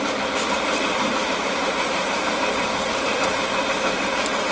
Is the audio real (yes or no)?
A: no